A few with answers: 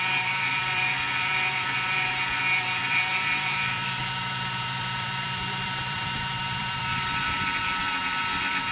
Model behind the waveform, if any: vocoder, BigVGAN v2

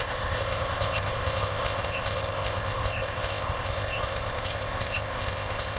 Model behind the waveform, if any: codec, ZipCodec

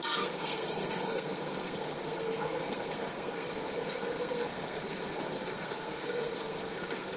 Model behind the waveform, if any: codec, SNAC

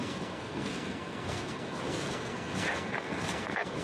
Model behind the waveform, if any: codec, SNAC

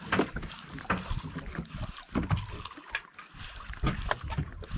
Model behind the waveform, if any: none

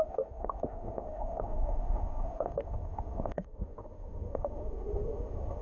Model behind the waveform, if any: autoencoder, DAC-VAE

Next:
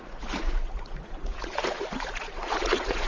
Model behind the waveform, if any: vocoder, Vocos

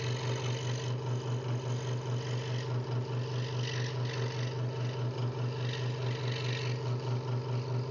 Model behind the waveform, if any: none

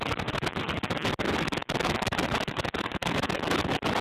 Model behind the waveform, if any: none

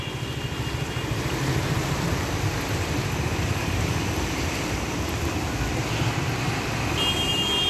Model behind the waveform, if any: none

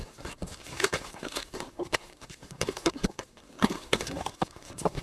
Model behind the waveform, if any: codec, SNAC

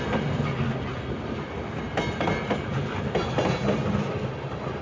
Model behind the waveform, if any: none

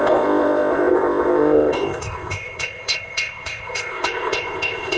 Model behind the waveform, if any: codec, ZipCodec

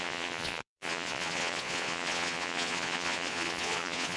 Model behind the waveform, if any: vocoder, Vocos